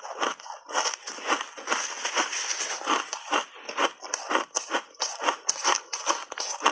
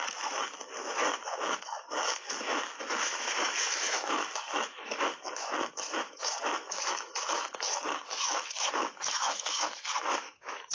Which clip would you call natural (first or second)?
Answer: first